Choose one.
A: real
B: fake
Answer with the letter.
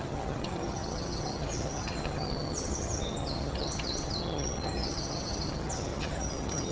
B